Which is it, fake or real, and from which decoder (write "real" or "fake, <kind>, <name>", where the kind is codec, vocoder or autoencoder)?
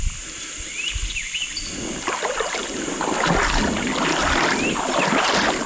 real